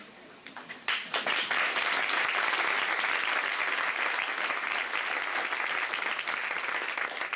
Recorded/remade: recorded